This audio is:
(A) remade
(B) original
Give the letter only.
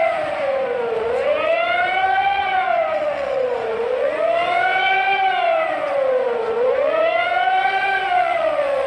A